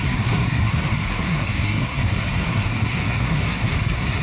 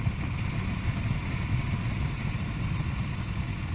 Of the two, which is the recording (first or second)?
second